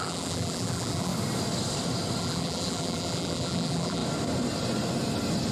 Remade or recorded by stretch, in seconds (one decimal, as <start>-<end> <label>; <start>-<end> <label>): 0.0-1.1 remade; 1.1-2.2 recorded; 2.2-4.0 remade; 4.0-5.5 recorded